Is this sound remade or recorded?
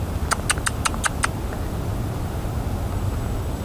recorded